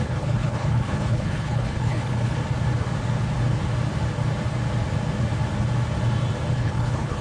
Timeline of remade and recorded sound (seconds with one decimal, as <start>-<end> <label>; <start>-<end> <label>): 0.0-2.4 remade; 2.4-6.5 recorded; 6.5-7.2 remade